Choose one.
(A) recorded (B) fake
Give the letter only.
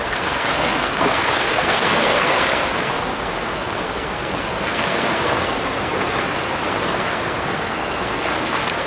B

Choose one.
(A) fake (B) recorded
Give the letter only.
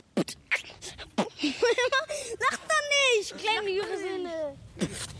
B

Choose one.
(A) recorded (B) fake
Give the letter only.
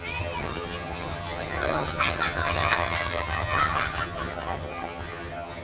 B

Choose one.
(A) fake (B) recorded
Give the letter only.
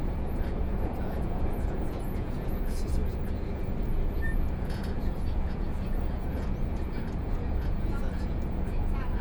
A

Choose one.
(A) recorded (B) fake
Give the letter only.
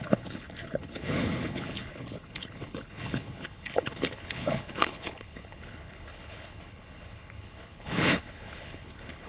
B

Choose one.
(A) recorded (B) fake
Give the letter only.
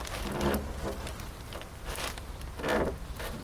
A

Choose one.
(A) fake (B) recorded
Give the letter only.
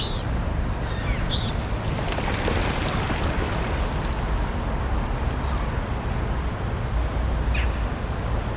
B